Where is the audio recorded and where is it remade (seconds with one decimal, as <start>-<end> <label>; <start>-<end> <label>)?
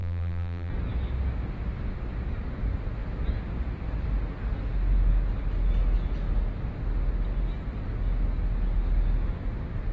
0.0-0.7 remade; 0.7-9.9 recorded